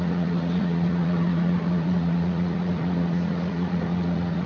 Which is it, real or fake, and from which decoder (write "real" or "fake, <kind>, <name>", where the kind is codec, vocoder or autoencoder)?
fake, vocoder, Vocos